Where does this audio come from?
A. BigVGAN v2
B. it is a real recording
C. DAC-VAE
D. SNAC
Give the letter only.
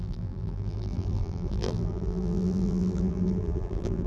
A